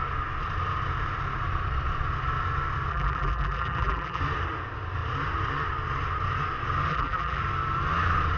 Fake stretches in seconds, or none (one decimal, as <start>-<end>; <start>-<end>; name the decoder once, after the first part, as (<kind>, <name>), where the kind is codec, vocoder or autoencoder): 2.9-4.2 (vocoder, BigVGAN v2); 6.9-7.4